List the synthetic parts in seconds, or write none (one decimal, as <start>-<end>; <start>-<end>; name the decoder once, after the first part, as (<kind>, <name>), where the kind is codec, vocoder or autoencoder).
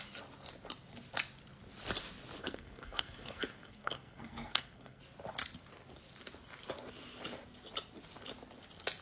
2.4-5.0 (codec, SNAC)